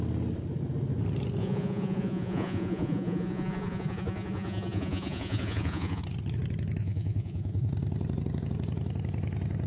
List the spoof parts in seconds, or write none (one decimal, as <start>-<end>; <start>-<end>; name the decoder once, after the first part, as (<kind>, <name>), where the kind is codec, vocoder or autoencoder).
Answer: 1.4-6.0 (vocoder, Vocos); 6.8-7.7